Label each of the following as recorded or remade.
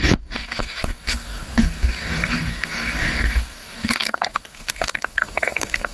remade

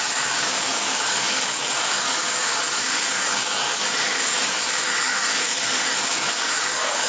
remade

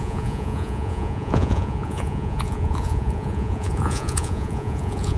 remade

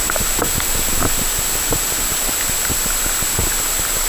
recorded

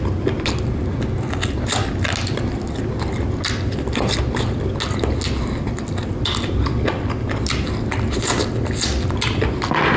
recorded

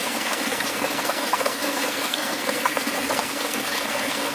remade